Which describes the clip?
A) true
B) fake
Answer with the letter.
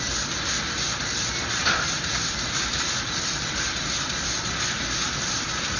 A